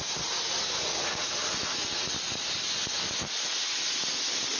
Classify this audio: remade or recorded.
recorded